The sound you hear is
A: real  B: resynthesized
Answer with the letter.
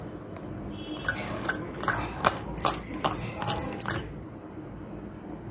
A